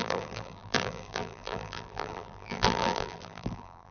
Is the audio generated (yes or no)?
yes